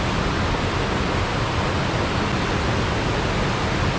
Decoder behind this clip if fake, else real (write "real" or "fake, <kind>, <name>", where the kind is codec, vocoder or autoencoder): real